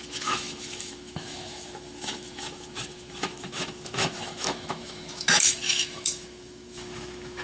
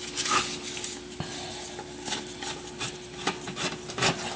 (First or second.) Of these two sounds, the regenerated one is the first